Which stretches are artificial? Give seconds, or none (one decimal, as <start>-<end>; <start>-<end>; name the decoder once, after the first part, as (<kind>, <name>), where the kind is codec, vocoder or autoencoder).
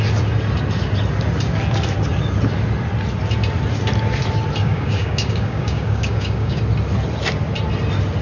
4.6-6.6 (codec, DAC)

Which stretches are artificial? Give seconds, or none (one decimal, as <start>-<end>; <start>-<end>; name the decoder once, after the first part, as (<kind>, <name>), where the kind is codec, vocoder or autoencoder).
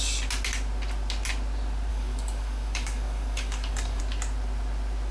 1.9-4.0 (codec, DAC)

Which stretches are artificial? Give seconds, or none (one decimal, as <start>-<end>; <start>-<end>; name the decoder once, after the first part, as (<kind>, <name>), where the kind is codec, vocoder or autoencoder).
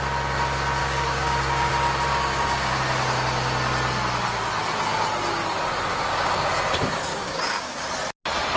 0.8-1.7 (codec, DAC); 2.1-2.7; 5.9-6.5; 7.1-7.8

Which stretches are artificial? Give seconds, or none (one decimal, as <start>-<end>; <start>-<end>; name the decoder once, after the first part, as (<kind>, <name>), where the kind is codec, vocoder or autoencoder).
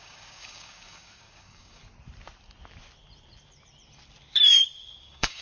0.0-1.8 (codec, DAC); 5.0-5.4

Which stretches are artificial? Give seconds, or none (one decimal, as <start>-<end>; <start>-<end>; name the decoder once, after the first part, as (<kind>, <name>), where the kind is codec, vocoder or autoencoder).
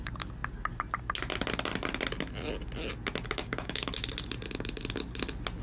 3.4-3.9 (codec, DAC)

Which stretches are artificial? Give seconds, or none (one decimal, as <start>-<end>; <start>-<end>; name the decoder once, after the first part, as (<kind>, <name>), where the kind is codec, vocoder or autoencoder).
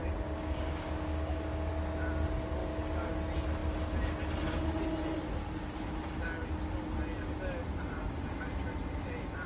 0.0-1.7 (codec, DAC); 2.6-3.1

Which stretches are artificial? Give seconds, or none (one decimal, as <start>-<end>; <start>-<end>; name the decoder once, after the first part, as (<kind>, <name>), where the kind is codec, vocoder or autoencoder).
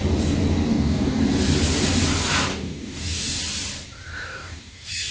0.7-1.2 (codec, DAC); 2.5-3.4; 4.1-5.1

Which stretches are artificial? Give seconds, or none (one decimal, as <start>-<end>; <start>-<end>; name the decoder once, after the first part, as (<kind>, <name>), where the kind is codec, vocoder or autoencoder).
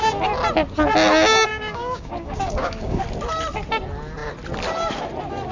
1.5-3.0 (codec, DAC)